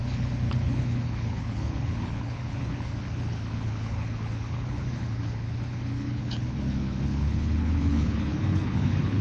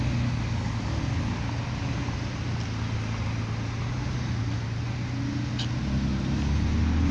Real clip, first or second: second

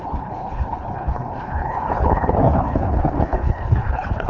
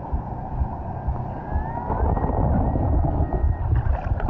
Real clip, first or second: second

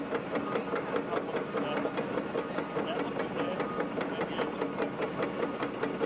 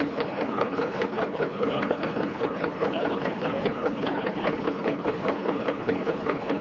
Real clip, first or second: first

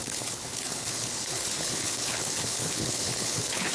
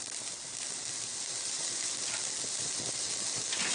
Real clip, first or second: second